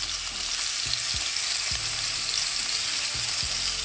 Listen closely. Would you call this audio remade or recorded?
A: recorded